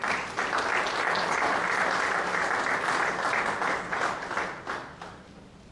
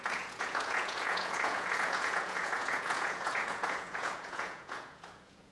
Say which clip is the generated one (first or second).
second